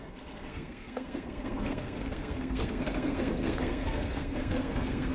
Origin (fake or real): fake